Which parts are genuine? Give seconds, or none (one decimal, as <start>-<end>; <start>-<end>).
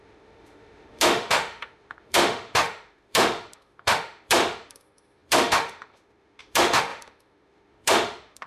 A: none